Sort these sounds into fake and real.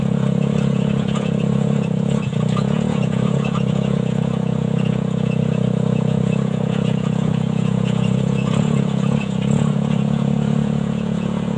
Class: fake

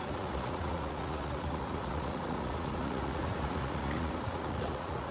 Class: fake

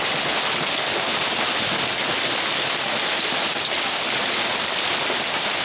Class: real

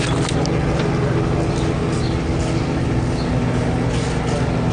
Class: real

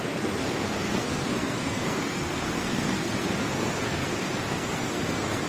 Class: fake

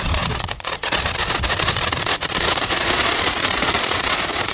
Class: fake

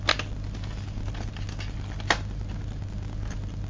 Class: real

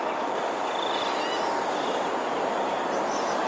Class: real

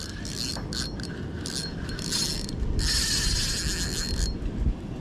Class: real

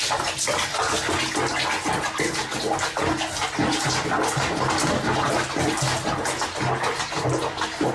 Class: real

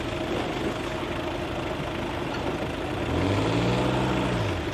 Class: real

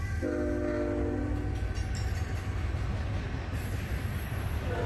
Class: real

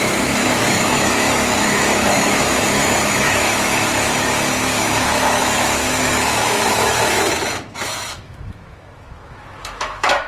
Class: fake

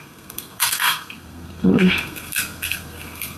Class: fake